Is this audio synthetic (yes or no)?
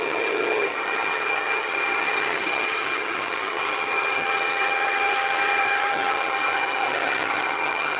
yes